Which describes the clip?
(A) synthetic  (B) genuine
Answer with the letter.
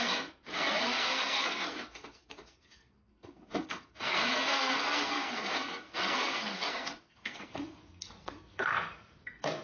A